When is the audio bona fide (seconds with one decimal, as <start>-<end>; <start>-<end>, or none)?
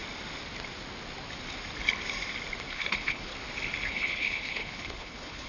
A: 0.0-2.7; 3.3-3.9